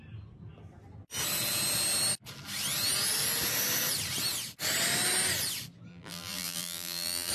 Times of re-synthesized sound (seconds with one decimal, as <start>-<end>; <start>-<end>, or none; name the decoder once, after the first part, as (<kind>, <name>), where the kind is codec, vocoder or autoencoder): 5.9-7.3 (vocoder, BigVGAN v2)